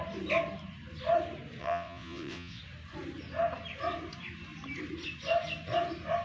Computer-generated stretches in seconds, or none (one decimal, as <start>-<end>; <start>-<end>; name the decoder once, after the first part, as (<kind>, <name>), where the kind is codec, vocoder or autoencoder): 1.6-2.6 (vocoder, WaveNeXt)